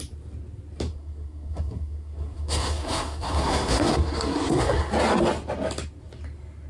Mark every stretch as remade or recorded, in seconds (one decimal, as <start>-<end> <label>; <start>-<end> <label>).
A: 0.0-0.9 recorded; 0.9-4.9 remade; 4.9-6.7 recorded